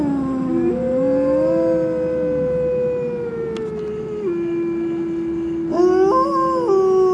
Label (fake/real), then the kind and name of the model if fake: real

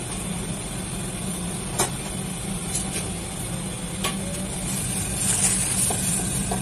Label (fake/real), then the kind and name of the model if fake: real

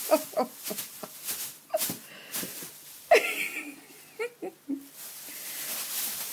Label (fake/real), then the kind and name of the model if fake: real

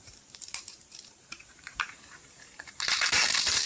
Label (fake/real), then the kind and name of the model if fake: fake, vocoder, BigVGAN v2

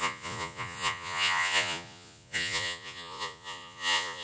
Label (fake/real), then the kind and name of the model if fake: fake, vocoder, Vocos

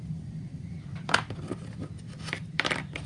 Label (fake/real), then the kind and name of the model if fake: fake, vocoder, BigVGAN v2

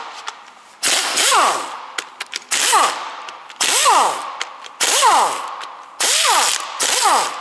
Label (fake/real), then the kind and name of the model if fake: fake, vocoder, BigVGAN v2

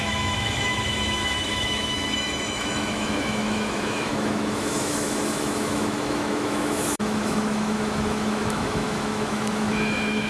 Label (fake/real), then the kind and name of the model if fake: fake, autoencoder, DAC-VAE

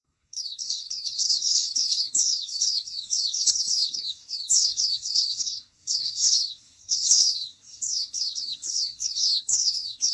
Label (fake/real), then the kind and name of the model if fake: fake, codec, SNAC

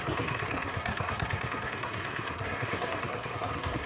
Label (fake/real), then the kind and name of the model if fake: fake, codec, SNAC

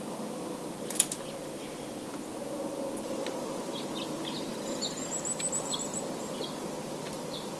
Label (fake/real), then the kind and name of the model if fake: real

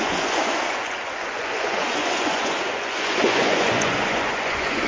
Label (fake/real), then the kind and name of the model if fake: fake, vocoder, Vocos